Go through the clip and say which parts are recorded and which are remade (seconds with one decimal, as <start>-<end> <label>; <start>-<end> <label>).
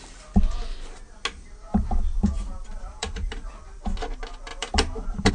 0.0-1.7 recorded; 1.7-3.6 remade; 3.6-4.5 recorded; 4.5-5.3 remade